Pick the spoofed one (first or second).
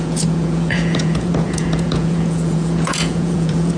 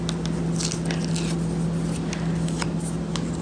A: first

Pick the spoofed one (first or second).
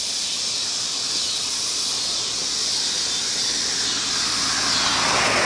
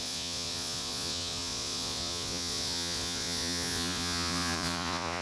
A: second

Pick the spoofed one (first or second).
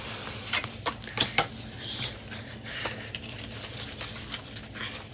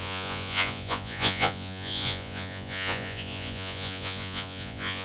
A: second